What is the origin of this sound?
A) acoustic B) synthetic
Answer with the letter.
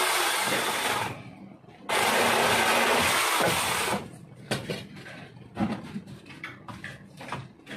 A